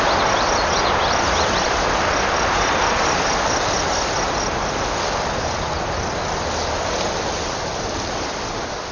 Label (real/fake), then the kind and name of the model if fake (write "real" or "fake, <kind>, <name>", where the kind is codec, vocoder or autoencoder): real